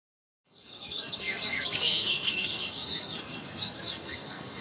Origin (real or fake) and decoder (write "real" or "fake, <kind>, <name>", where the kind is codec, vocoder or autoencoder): fake, codec, SNAC